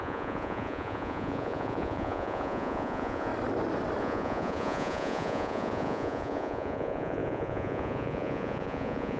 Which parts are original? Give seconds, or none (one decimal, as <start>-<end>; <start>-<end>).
3.3-4.0